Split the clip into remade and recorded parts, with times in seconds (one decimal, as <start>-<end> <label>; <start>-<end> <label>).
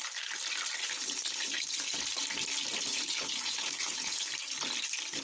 0.0-0.8 recorded; 0.8-2.0 remade; 2.0-2.9 recorded; 2.9-4.3 remade; 4.3-5.2 recorded